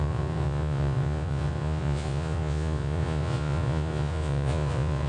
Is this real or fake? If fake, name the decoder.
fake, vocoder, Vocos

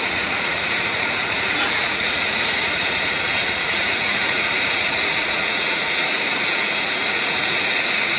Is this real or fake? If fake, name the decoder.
fake, vocoder, Vocos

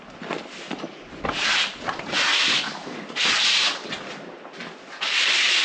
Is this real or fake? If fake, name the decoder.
real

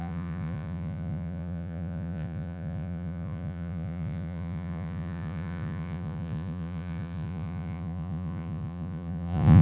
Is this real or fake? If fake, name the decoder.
fake, vocoder, Vocos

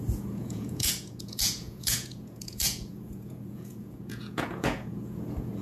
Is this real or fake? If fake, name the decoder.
fake, vocoder, Vocos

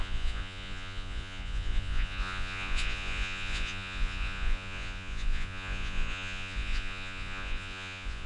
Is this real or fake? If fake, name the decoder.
fake, vocoder, Vocos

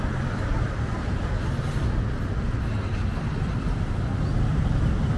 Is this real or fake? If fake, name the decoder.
real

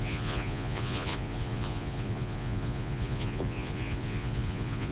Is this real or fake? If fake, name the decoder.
fake, vocoder, Vocos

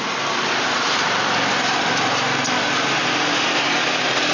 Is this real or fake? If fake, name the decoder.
real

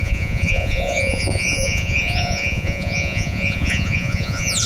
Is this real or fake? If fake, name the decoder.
fake, vocoder, Vocos